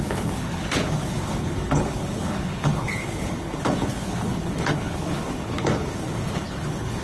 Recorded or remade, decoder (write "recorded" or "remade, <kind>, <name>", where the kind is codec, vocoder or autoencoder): remade, codec, HILCodec